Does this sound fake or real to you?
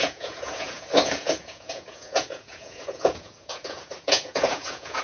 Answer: fake